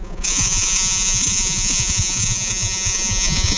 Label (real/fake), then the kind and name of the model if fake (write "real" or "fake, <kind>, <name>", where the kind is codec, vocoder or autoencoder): fake, vocoder, Vocos